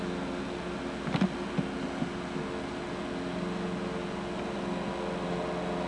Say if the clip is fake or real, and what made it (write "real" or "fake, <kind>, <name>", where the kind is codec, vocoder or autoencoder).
real